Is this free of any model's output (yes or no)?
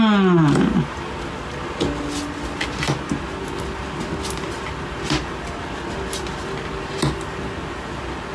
yes